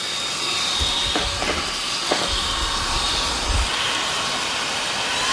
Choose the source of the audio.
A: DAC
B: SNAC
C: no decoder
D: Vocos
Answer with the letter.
C